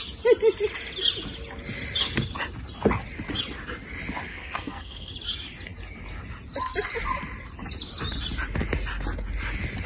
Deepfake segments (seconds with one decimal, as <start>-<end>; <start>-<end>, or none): 4.3-5.1